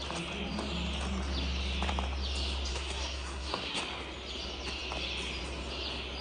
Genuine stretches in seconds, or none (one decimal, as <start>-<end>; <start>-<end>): 0.0-2.7; 3.8-6.2